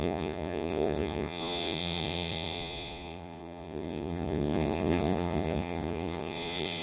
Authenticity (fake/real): fake